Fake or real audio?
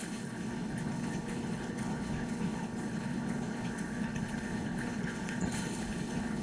fake